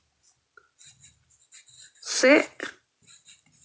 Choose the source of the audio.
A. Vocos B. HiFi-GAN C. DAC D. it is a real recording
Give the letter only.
D